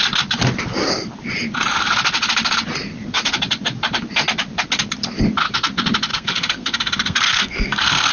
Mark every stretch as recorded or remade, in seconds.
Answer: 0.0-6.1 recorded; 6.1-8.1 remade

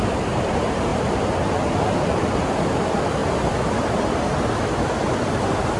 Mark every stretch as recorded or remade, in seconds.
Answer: 0.0-0.9 remade; 0.9-2.5 recorded; 2.5-3.2 remade; 3.2-5.3 recorded; 5.3-5.8 remade

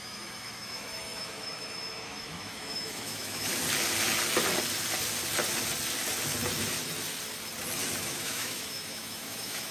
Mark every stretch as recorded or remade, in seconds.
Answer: 0.0-3.5 remade; 3.5-8.0 recorded; 8.0-9.7 remade

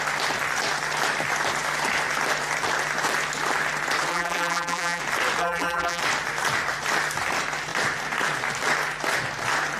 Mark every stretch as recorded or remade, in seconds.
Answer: 0.0-4.1 recorded; 4.1-5.0 remade; 5.0-5.4 recorded; 5.4-6.0 remade; 6.0-9.8 recorded